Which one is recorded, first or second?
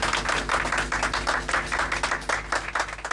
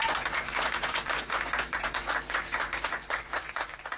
first